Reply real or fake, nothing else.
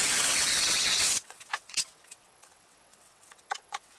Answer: fake